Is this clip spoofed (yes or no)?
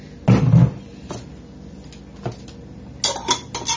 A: no